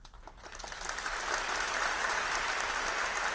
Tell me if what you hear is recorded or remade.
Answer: recorded